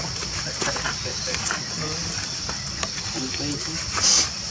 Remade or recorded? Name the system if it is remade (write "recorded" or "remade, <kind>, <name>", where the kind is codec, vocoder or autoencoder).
recorded